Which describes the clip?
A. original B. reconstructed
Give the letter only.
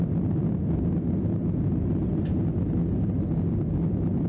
A